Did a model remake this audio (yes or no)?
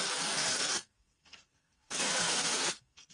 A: yes